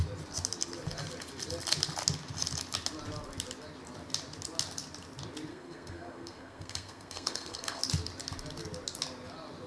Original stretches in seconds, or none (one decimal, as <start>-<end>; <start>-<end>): 0.0-5.5; 7.8-9.7